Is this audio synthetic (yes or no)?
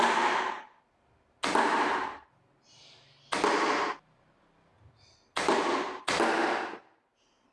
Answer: no